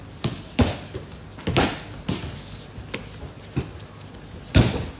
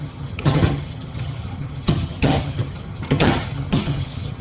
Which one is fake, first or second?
second